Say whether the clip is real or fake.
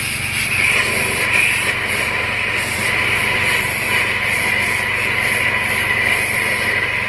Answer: real